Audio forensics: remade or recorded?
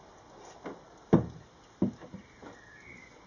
recorded